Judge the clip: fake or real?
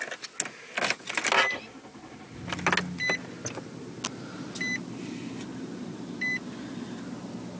real